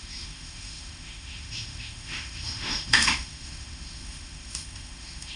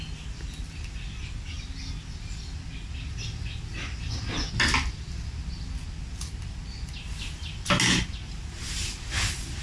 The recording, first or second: second